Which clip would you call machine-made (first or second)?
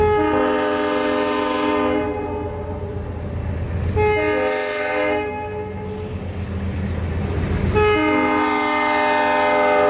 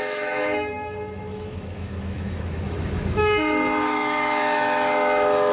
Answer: second